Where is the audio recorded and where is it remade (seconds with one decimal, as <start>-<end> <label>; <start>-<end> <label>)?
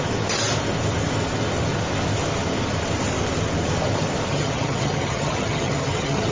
0.0-4.3 recorded; 4.3-6.3 remade